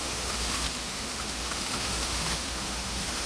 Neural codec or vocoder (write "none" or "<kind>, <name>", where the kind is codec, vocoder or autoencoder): autoencoder, DAC-VAE